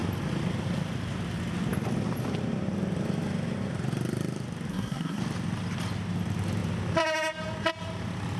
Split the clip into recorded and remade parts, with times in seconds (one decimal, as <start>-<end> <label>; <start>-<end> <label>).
0.0-4.7 recorded; 4.7-5.2 remade; 5.2-8.4 recorded